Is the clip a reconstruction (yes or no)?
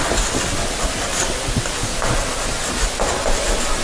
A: no